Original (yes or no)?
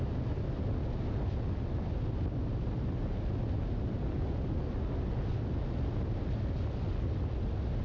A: yes